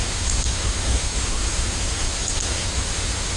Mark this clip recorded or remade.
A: remade